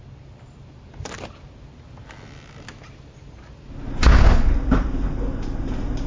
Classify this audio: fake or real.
real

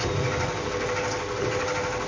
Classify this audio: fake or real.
real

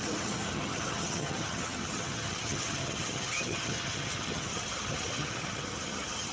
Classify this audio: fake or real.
fake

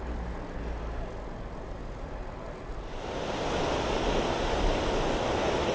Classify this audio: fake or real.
real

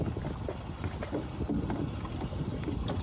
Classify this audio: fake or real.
real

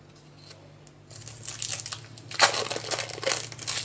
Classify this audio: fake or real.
real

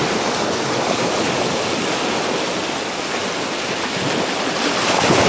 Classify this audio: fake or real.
real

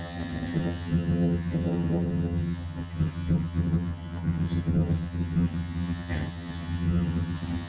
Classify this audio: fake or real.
fake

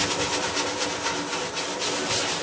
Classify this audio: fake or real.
real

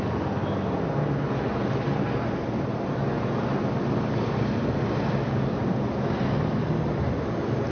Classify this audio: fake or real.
real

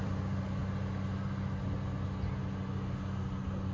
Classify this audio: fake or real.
real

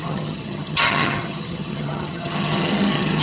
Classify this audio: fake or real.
fake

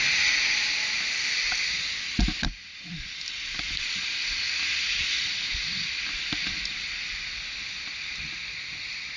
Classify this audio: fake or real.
real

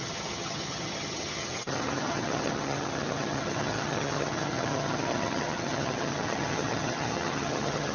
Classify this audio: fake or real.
fake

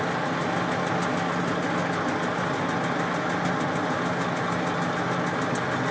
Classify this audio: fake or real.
real